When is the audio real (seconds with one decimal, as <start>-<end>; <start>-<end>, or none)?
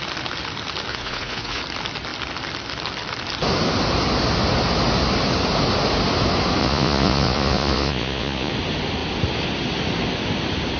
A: 0.0-0.9; 1.6-6.6; 8.5-10.8